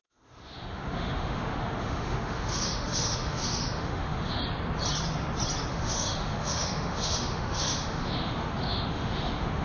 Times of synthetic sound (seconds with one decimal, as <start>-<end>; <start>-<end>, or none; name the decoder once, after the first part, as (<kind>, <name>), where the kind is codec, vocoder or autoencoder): 0.0-4.4 (autoencoder, DAC-VAE); 5.7-9.6